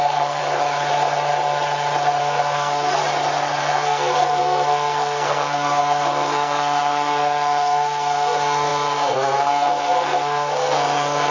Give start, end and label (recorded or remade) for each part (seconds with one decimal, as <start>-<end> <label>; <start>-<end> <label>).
0.0-0.4 remade; 0.4-2.2 recorded; 2.2-3.0 remade; 3.0-3.6 recorded; 3.6-11.3 remade

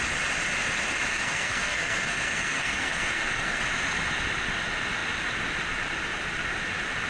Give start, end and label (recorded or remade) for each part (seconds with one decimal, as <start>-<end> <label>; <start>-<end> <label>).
0.0-1.1 recorded; 1.1-3.6 remade; 3.6-7.1 recorded